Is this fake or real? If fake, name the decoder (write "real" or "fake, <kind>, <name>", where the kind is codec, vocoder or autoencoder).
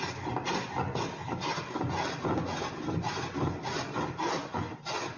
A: real